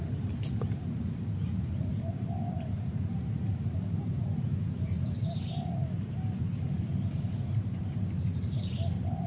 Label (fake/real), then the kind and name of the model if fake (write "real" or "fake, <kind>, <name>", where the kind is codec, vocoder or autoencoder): fake, vocoder, BigVGAN v2